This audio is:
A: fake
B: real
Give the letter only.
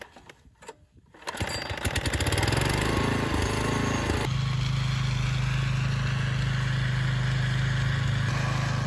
B